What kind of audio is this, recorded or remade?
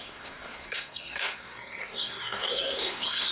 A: remade